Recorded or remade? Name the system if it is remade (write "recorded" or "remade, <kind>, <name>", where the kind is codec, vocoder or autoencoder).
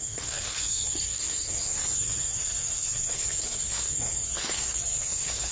remade, codec, SNAC